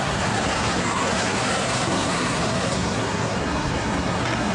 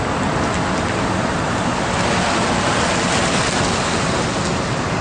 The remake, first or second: first